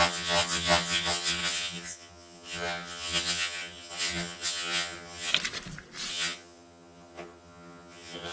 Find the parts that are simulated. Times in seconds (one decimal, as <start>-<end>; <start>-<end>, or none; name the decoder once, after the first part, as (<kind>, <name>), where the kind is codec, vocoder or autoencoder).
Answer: 0.0-5.3 (vocoder, HiFi-GAN); 6.1-8.3